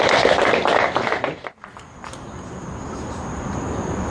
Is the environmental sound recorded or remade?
recorded